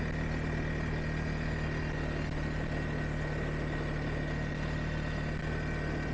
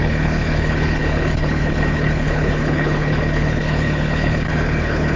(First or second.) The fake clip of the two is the second